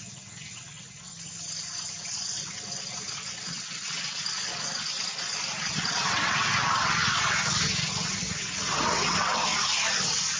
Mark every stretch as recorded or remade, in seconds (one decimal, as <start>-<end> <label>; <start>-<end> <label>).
0.0-1.1 remade; 1.1-2.0 recorded; 2.0-4.5 remade; 4.5-5.8 recorded; 5.8-9.5 remade; 9.5-10.4 recorded